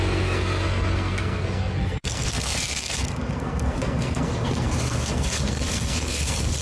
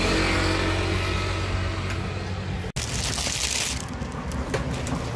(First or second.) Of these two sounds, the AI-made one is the first